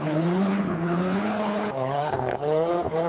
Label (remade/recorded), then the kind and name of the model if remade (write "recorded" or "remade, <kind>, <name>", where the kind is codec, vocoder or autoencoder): remade, codec, HILCodec